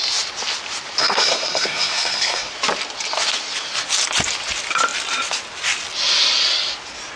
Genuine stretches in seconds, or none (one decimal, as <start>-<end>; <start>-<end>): 0.0-1.0; 2.5-7.2